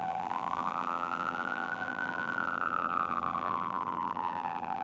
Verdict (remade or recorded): remade